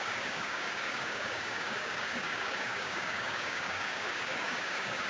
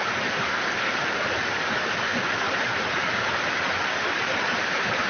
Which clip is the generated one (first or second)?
first